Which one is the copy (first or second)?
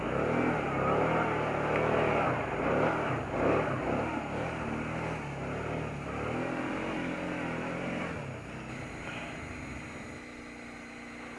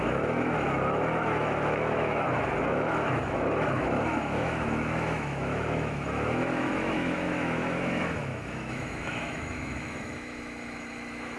second